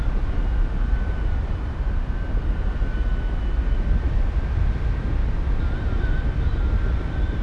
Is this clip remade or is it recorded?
recorded